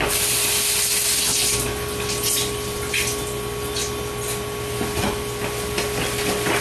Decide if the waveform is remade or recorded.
recorded